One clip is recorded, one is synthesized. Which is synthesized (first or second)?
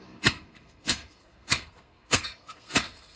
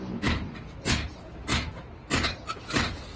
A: first